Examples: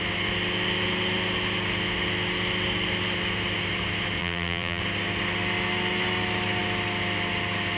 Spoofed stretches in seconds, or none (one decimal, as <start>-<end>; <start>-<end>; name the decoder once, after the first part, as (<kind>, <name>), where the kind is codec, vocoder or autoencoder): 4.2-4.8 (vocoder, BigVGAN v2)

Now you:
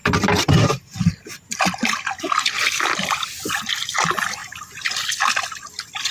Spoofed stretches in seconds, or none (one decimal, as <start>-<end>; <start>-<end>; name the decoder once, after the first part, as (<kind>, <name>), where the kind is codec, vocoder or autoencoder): 0.0-3.7 (vocoder, BigVGAN v2)

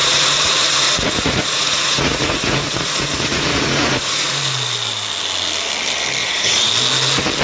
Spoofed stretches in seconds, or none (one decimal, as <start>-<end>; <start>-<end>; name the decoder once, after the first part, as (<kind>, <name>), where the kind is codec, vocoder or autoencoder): 0.0-4.4 (vocoder, Vocos); 6.2-6.7

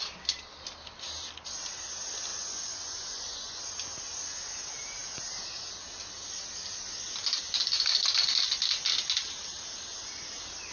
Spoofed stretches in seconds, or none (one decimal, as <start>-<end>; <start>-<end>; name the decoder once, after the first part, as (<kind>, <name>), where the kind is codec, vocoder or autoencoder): 2.3-3.6 (vocoder, Vocos)